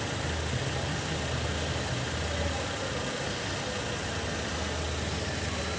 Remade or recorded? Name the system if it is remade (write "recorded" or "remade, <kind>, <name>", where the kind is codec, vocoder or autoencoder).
recorded